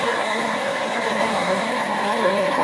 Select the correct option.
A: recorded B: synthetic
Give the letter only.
B